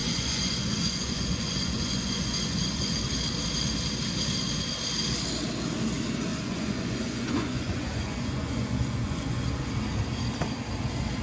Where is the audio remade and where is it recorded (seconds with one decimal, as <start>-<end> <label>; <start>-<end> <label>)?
0.0-3.0 remade; 3.0-6.3 recorded; 6.3-9.7 remade; 9.7-11.2 recorded